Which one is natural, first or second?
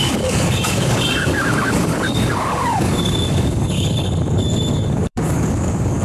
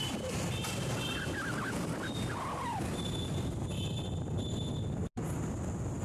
second